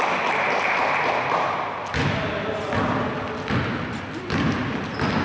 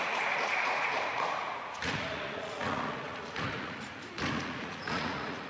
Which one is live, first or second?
first